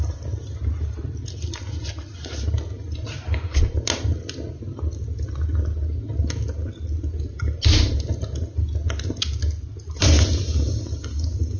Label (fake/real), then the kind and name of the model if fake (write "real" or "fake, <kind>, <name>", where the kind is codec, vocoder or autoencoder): real